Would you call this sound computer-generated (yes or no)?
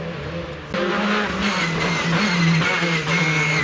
no